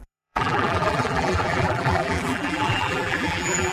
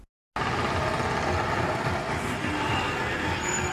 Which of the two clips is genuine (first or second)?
second